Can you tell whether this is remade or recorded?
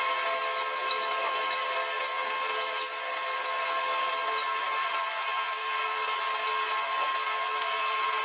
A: recorded